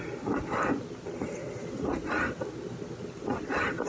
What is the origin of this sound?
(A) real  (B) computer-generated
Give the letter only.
A